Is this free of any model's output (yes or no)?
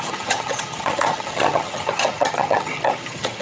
no